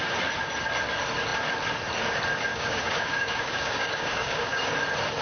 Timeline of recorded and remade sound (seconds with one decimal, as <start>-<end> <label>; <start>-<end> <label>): 0.0-2.5 recorded; 2.5-4.7 remade; 4.7-5.2 recorded